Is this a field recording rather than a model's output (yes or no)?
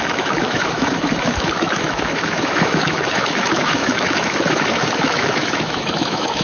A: no